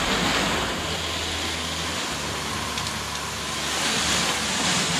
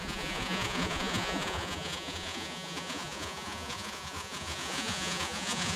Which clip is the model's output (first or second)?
second